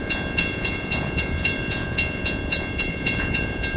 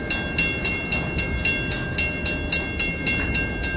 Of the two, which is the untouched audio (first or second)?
second